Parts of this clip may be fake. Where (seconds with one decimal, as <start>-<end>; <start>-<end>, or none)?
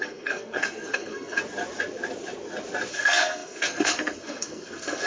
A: 0.0-1.4; 2.9-5.1